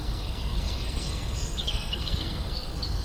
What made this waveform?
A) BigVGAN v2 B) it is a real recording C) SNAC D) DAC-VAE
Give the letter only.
C